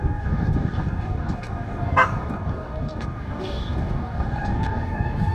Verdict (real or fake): fake